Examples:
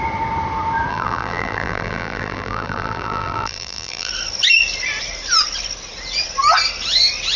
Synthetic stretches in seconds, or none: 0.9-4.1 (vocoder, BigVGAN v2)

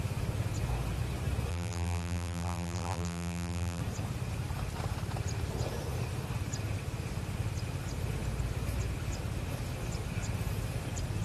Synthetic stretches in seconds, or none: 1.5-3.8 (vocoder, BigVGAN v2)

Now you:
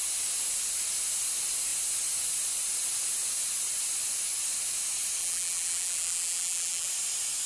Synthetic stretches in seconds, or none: 5.2-6.9 (vocoder, BigVGAN v2)